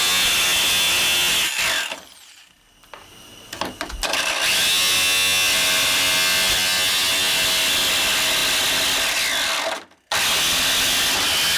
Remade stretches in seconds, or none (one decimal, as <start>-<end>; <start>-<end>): none